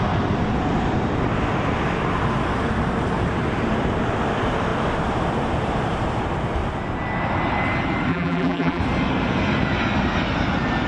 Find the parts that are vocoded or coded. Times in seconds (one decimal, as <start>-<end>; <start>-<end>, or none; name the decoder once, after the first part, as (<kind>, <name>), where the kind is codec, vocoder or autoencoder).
8.1-8.8 (vocoder, BigVGAN v2)